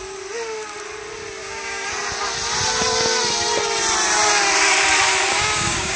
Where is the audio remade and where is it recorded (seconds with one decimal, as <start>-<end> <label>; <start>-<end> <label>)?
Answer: 0.0-1.4 recorded; 1.4-1.9 remade; 1.9-5.3 recorded; 5.3-6.0 remade